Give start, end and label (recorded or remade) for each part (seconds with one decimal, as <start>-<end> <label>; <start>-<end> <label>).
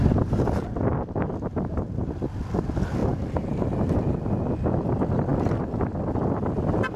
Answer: 0.0-7.0 recorded